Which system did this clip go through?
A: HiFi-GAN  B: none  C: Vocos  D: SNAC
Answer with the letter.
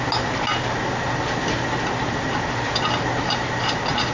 B